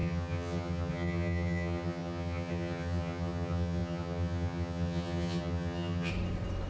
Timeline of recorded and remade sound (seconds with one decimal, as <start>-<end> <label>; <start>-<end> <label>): 0.0-6.1 remade; 6.1-6.7 recorded